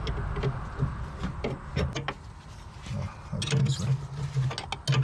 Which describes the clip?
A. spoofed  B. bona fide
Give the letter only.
B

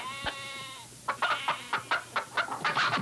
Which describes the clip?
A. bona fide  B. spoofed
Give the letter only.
A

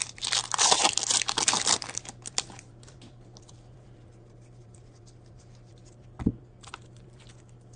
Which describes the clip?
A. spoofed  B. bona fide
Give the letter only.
A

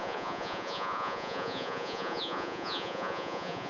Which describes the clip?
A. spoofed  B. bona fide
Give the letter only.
A